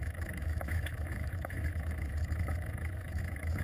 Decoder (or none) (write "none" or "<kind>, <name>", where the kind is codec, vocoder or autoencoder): autoencoder, DAC-VAE